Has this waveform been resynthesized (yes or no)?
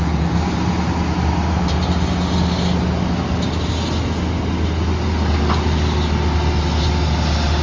no